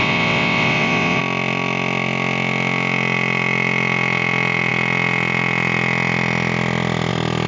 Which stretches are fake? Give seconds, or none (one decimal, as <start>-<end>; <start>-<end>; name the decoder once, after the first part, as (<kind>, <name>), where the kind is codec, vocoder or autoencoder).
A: 0.0-1.2 (vocoder, WaveNeXt)